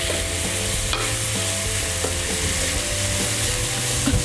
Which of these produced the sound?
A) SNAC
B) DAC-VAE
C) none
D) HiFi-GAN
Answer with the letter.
C